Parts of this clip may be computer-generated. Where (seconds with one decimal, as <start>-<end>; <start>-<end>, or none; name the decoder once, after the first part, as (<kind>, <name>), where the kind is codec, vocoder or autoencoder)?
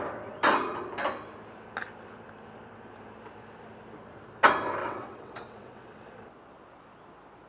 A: 4.8-6.1 (vocoder, WaveNeXt)